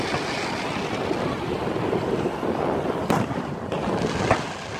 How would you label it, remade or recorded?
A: recorded